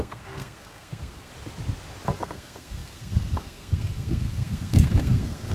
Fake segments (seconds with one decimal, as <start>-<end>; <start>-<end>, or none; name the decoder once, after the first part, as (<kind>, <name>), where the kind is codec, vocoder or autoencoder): 0.0-1.3 (codec, SNAC); 2.2-5.5